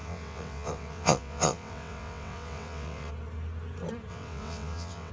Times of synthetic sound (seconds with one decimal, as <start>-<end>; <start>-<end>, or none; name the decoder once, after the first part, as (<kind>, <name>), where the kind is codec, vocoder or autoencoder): 0.0-3.1 (vocoder, WaveNeXt); 4.1-5.1